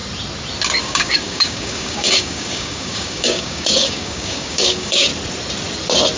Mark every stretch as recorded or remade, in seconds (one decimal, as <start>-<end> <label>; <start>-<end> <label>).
0.0-0.8 recorded; 0.8-5.1 remade; 5.1-6.2 recorded